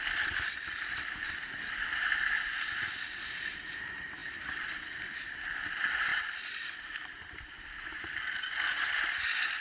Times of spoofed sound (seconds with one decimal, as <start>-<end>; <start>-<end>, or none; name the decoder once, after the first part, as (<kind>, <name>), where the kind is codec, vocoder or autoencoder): 6.1-9.1 (vocoder, BigVGAN v2)